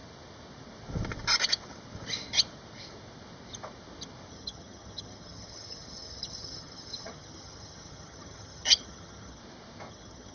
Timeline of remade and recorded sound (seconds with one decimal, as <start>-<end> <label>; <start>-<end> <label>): 0.0-4.3 recorded; 4.3-9.4 remade; 9.4-9.9 recorded; 9.9-10.3 remade